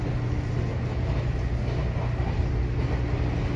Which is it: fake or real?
real